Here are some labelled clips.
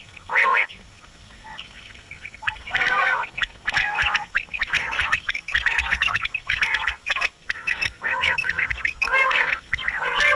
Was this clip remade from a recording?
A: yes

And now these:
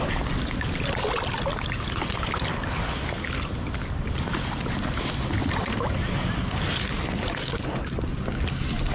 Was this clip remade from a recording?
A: no